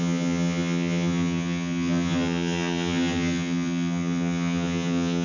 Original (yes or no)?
no